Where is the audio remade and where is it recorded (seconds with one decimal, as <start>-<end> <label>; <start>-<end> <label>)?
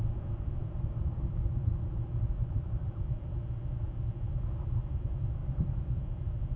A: 0.0-0.6 recorded; 0.6-3.0 remade; 3.0-5.4 recorded; 5.4-5.9 remade; 5.9-6.6 recorded